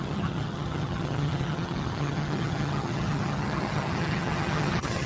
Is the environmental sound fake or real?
fake